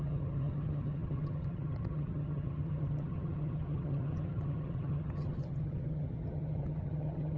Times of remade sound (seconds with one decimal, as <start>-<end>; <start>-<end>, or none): 0.0-7.4